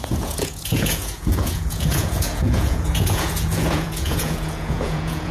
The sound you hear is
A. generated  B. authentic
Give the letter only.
A